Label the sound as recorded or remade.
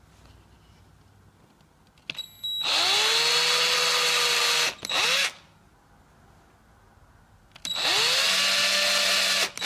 recorded